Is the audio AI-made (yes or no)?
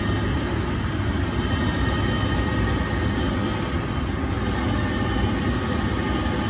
no